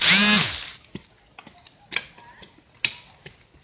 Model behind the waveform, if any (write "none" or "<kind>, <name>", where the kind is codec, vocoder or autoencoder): none